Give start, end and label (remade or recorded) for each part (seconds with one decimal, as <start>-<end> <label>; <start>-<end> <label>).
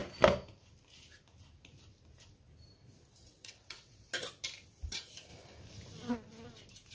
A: 0.0-3.2 recorded; 3.2-4.1 remade; 4.1-6.9 recorded